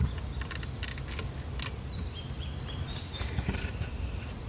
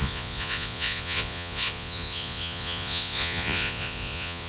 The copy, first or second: second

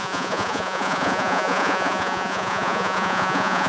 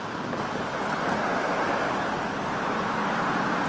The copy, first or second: first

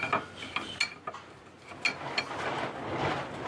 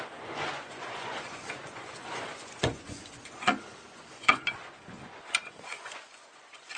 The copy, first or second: second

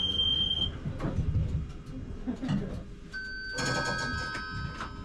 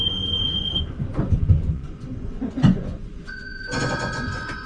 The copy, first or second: second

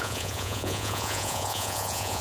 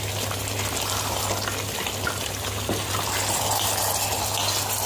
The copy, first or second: first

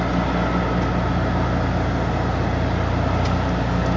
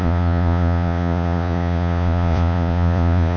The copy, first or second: second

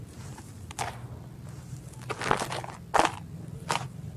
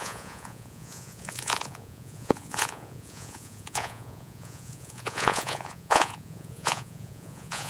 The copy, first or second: second